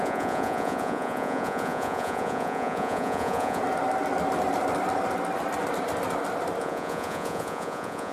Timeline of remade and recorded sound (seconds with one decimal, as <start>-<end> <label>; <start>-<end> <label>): 0.0-3.6 remade; 3.6-6.6 recorded; 6.6-8.1 remade